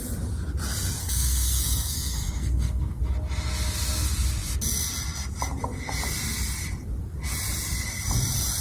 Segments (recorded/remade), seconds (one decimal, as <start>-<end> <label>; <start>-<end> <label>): 0.0-1.0 recorded; 1.0-3.0 remade; 3.0-8.6 recorded